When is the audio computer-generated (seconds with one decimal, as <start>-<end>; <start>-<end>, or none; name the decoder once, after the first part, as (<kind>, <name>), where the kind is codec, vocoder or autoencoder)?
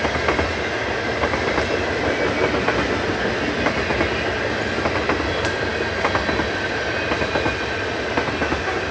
none